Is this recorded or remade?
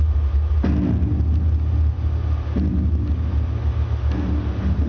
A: recorded